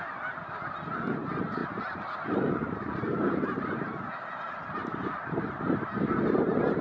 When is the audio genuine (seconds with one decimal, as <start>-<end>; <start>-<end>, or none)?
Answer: 0.0-1.6; 3.6-6.8